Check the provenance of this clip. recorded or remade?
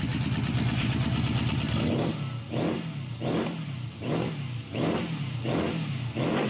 recorded